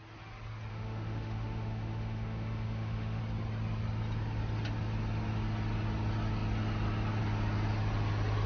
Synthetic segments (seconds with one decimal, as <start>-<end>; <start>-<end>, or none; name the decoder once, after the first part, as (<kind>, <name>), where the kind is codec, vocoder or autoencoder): 0.7-3.2 (autoencoder, DAC-VAE)